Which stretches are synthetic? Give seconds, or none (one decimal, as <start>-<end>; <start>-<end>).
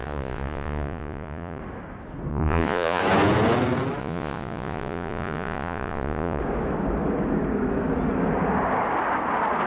0.0-1.6; 2.3-3.0; 4.0-6.4